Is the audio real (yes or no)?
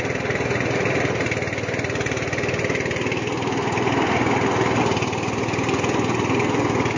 yes